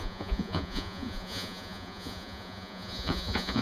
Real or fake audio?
fake